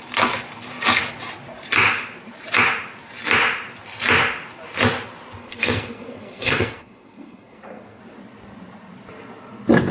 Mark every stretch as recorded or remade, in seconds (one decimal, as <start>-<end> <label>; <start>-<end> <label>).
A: 0.0-5.4 recorded; 5.4-8.0 remade; 8.0-9.9 recorded